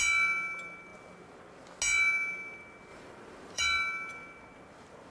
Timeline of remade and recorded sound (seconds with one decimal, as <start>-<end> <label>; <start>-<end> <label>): 0.0-2.9 recorded; 2.9-3.6 remade; 3.6-5.1 recorded